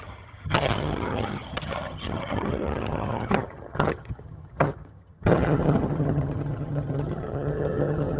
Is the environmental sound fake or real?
fake